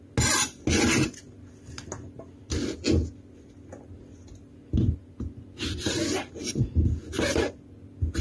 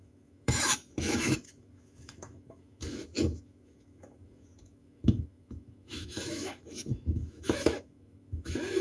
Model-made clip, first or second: second